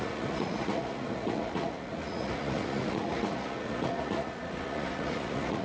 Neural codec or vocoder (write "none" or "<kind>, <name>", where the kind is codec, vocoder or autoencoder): vocoder, Vocos